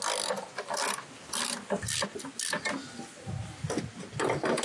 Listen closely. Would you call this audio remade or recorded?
recorded